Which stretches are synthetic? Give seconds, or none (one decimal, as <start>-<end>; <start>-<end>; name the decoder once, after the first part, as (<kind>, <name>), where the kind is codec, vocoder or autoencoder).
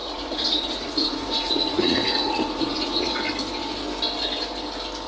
0.0-3.1 (vocoder, Vocos)